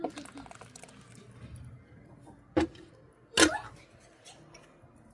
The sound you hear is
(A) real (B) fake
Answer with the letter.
A